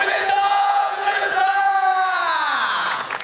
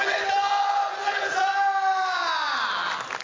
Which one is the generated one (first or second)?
first